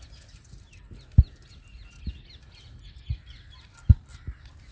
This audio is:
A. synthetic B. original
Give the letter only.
B